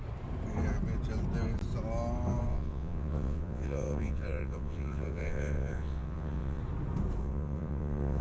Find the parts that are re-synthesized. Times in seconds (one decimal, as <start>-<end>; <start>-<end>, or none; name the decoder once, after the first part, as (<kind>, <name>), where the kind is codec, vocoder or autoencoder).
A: 2.5-6.6 (vocoder, WaveNeXt); 7.2-8.2